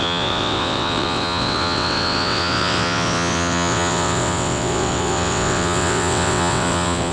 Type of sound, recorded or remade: remade